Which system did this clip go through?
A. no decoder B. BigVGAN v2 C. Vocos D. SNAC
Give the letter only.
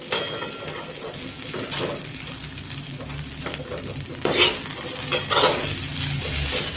A